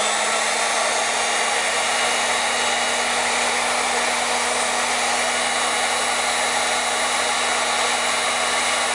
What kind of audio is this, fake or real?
real